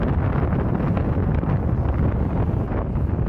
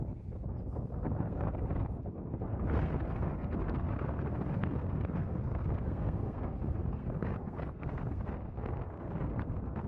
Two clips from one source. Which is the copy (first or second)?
second